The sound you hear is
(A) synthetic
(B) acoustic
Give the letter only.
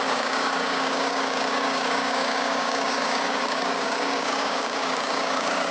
A